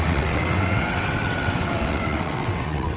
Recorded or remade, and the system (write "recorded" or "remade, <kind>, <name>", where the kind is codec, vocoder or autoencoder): remade, vocoder, WaveNeXt